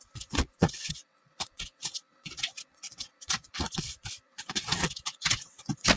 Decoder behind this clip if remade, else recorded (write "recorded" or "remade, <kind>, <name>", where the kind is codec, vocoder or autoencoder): remade, vocoder, WaveNeXt